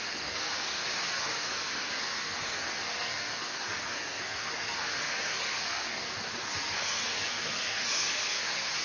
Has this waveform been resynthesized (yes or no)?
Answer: yes